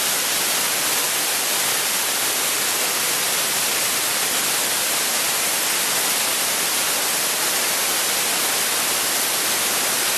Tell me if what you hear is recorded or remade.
recorded